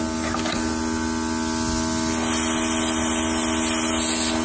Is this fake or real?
real